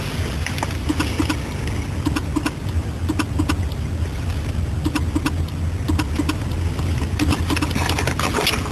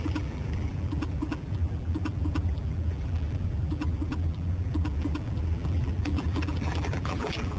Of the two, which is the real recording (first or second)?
first